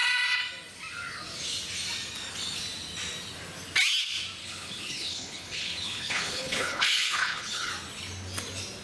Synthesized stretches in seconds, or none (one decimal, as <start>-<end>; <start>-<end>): 4.4-7.7